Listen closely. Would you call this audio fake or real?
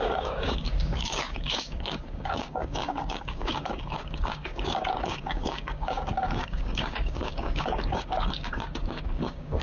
fake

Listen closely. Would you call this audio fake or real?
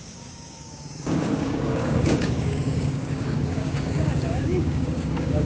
fake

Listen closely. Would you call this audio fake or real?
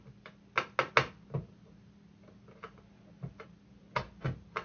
real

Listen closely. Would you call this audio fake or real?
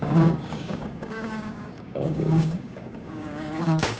fake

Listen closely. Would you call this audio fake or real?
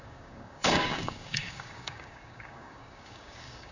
fake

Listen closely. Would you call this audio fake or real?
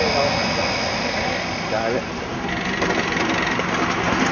real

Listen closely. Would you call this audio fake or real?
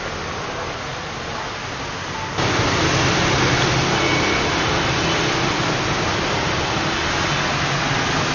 real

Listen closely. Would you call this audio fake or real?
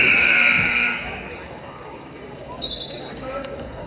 fake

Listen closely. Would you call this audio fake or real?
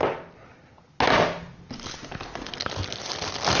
real